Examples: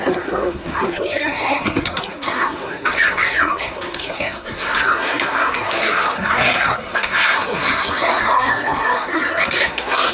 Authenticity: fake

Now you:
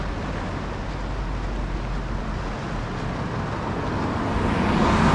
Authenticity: real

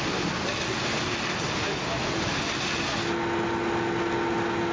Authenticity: real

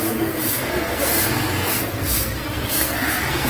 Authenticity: fake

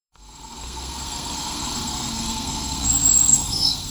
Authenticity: fake